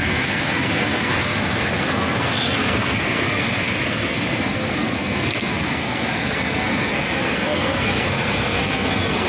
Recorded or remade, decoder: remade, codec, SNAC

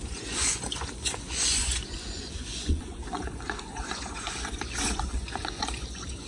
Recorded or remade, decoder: remade, vocoder, Vocos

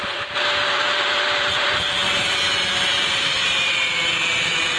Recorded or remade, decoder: remade, vocoder, BigVGAN v2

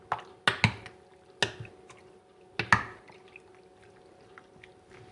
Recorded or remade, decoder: recorded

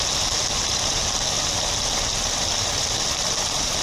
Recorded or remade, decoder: remade, vocoder, BigVGAN v2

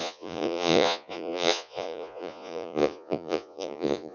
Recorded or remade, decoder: remade, vocoder, Vocos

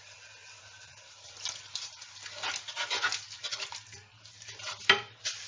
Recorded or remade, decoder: recorded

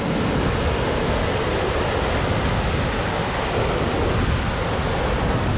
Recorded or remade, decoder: recorded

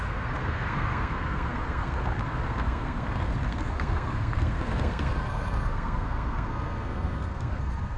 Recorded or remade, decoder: remade, codec, SNAC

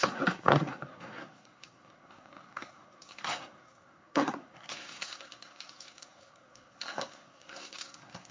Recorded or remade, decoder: remade, codec, SNAC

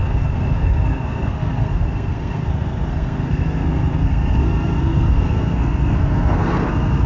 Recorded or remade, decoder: remade, codec, SNAC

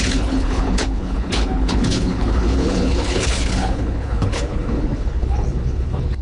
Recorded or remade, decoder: remade, codec, HILCodec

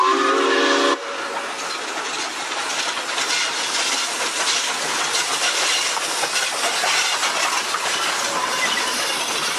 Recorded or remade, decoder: recorded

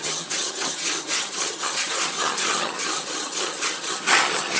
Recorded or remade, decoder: remade, vocoder, HiFi-GAN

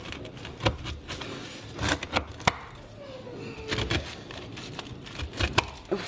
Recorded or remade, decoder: recorded